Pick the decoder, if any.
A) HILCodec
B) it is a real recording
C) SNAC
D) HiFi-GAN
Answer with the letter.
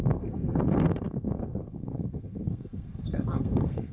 C